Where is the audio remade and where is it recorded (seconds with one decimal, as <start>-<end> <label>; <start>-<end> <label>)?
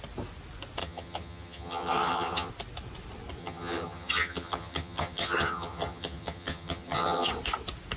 0.0-0.8 recorded; 0.8-2.5 remade; 2.5-3.4 recorded; 3.4-7.3 remade; 7.3-8.0 recorded